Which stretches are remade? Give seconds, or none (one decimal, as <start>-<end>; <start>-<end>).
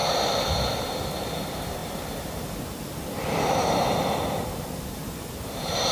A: 0.8-1.8; 4.8-5.9